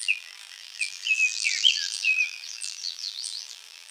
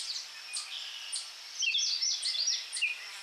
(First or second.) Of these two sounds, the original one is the second